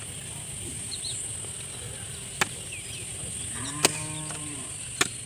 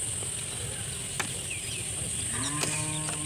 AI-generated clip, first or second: second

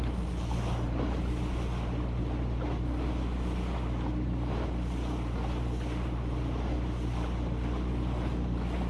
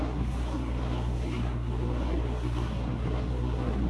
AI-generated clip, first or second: second